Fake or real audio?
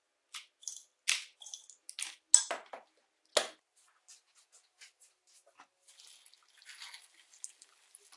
real